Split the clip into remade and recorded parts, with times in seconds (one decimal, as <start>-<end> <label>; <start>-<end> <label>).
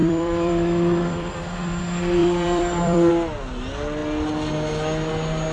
0.0-1.8 remade; 1.8-2.2 recorded; 2.2-3.1 remade; 3.1-5.5 recorded